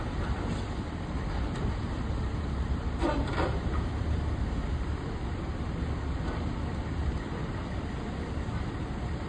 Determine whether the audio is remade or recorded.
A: remade